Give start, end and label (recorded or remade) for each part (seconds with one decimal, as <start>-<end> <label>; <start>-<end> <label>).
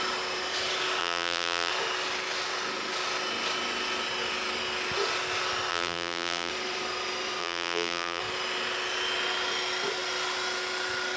0.0-1.0 recorded; 1.0-1.7 remade; 1.7-5.7 recorded; 5.7-6.5 remade; 6.5-7.4 recorded; 7.4-8.2 remade; 8.2-11.2 recorded